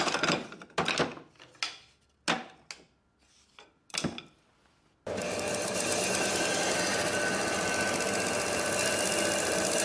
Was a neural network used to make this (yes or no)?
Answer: no